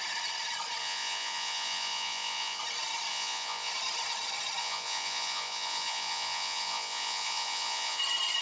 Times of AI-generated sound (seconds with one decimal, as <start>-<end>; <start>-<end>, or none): 0.8-2.6; 3.1-3.7; 4.6-8.0